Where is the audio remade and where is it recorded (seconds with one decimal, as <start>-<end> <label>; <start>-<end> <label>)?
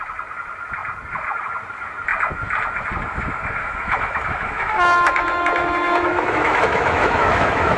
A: 0.0-3.6 recorded; 3.6-7.8 remade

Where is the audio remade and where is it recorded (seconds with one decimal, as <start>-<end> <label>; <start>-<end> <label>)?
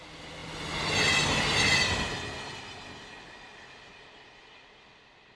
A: 0.0-5.4 recorded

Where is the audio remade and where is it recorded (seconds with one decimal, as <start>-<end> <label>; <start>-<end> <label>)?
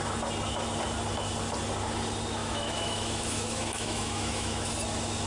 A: 0.0-2.4 recorded; 2.4-4.7 remade; 4.7-5.3 recorded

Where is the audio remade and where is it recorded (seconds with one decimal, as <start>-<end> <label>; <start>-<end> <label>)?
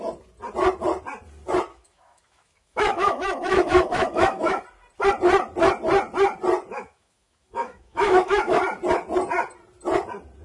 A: 0.0-1.7 recorded; 1.7-4.6 remade; 4.6-6.7 recorded; 6.7-8.6 remade; 8.6-10.4 recorded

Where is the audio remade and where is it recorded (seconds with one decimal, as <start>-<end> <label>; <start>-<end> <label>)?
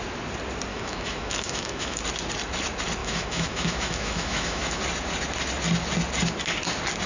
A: 0.0-0.7 recorded; 0.7-2.0 remade; 2.0-3.0 recorded; 3.0-4.8 remade; 4.8-7.1 recorded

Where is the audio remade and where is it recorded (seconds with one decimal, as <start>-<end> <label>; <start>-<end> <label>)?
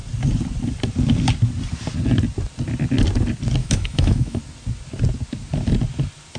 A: 0.0-3.6 recorded; 3.6-4.4 remade; 4.4-6.4 recorded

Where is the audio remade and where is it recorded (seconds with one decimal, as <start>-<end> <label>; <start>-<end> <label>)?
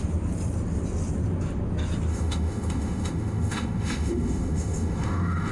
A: 0.0-2.1 recorded; 2.1-5.5 remade